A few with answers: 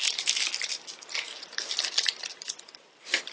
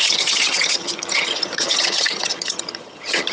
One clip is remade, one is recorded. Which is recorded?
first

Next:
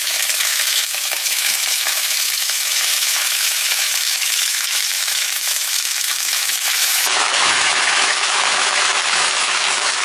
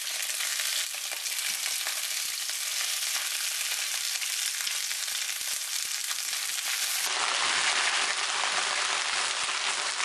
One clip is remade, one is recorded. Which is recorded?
second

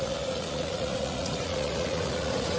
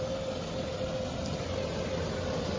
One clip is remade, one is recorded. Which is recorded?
second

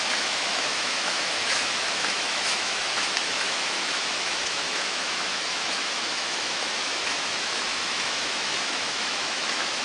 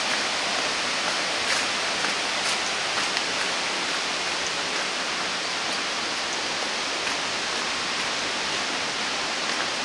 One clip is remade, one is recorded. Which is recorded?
second